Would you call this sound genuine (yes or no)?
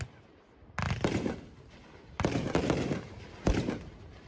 yes